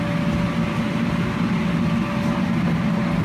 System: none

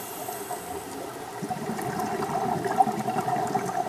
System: none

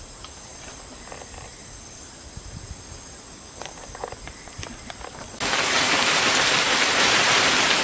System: none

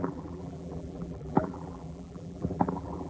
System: vocoder, BigVGAN v2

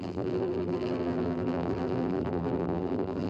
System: vocoder, BigVGAN v2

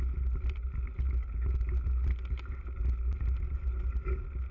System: none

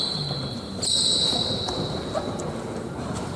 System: vocoder, BigVGAN v2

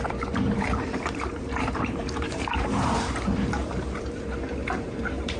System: vocoder, BigVGAN v2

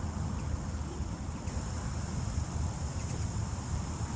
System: vocoder, BigVGAN v2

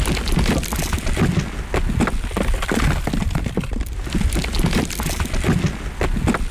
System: none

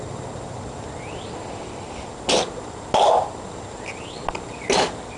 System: none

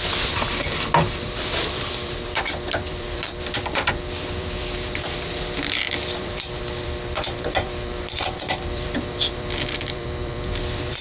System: vocoder, BigVGAN v2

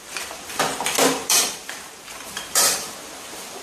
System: vocoder, BigVGAN v2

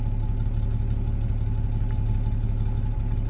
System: none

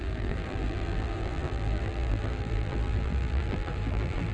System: vocoder, BigVGAN v2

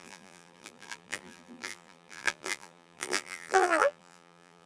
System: vocoder, BigVGAN v2